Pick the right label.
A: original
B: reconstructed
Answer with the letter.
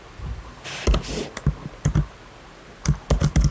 A